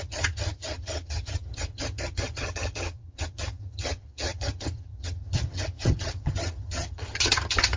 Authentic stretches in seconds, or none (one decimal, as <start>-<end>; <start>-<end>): none